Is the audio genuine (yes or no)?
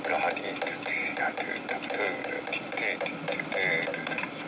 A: yes